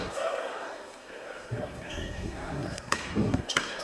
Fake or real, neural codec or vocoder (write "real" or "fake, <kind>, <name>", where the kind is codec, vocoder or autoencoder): fake, codec, SNAC